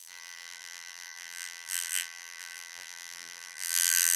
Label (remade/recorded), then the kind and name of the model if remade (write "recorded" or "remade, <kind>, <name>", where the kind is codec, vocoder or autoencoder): remade, vocoder, BigVGAN v2